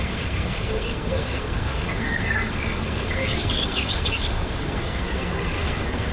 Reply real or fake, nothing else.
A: fake